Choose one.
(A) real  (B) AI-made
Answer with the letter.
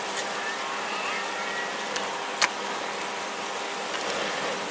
A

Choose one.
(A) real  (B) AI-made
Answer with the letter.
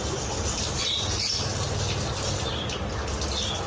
A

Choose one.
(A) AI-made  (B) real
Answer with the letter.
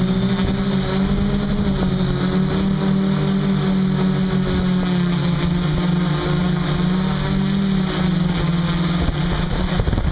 B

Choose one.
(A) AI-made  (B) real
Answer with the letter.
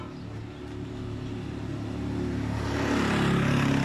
B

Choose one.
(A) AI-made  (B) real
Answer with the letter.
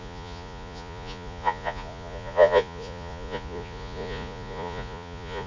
A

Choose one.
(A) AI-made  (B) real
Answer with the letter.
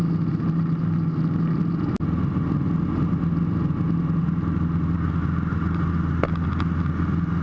B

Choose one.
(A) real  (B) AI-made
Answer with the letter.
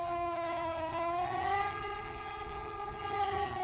B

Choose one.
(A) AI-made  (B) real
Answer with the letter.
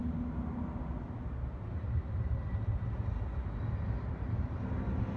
B